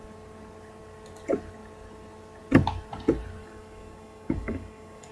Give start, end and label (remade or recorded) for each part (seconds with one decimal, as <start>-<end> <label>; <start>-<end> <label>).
0.0-3.4 recorded; 3.4-5.1 remade